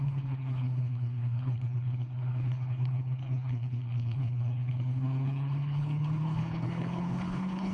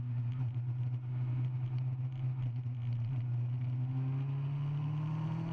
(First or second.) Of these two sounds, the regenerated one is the first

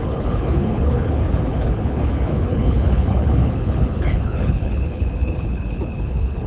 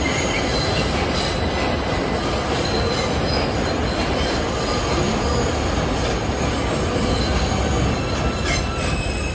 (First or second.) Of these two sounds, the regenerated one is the first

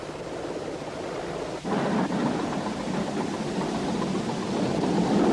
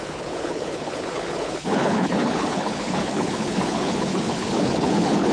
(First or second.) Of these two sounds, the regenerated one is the second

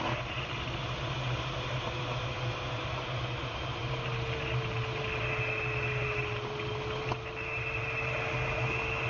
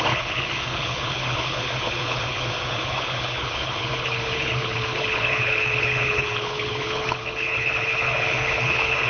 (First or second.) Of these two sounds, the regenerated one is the second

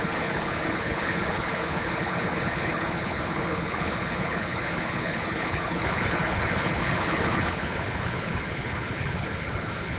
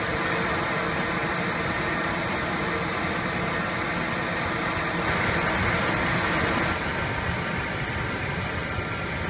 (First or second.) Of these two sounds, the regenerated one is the first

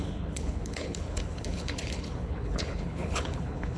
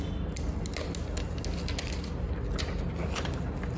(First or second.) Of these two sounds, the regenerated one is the first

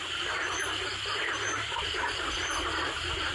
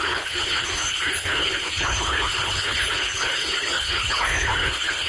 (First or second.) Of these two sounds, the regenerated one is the second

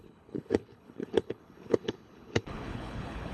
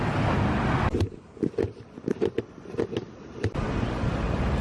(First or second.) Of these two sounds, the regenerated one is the first